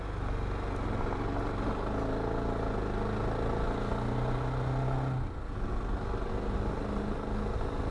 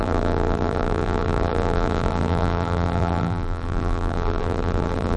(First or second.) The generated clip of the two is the second